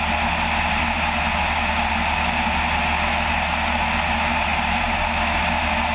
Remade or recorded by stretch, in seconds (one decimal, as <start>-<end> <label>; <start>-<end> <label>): 0.0-5.9 recorded